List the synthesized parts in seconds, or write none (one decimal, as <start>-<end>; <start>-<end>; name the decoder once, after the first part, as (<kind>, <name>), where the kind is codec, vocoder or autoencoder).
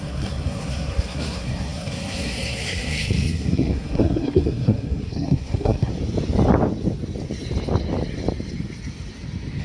0.0-5.9 (codec, SNAC)